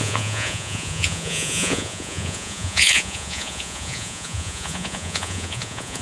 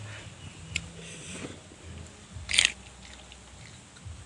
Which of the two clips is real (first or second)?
second